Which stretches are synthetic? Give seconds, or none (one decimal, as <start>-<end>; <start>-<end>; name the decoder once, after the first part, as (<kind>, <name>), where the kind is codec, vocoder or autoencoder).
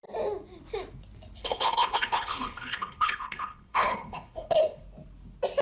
1.4-4.8 (codec, HILCodec)